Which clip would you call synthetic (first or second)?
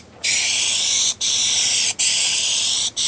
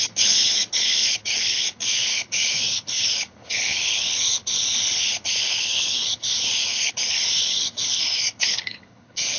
second